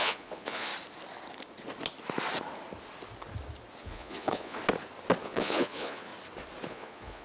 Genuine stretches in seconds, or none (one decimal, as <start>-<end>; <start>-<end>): 0.7-3.8; 4.6-5.2; 6.1-6.7